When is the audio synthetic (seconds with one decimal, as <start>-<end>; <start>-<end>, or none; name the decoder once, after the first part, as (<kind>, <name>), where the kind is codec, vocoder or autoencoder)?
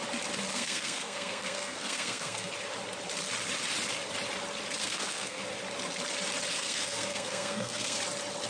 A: 0.5-2.5 (codec, SNAC); 4.8-5.4; 6.5-8.0